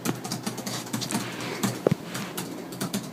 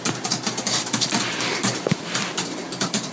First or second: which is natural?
first